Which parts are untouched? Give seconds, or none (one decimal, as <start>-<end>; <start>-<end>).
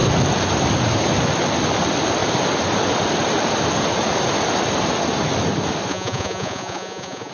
0.0-5.9